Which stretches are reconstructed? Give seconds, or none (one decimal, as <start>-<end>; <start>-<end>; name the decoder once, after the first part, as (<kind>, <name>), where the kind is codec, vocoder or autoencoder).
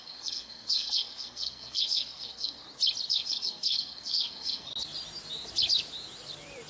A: 0.0-2.6 (codec, SNAC); 3.1-4.7